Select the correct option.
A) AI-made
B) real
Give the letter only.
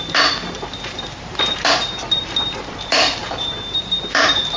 A